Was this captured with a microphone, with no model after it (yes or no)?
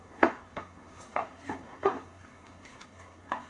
no